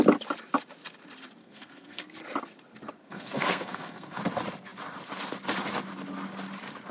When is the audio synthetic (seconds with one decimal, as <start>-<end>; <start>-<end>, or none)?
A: 1.4-2.1; 3.0-4.2